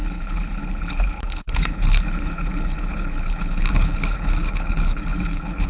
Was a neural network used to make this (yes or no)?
yes